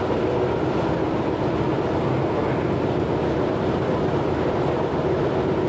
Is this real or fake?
real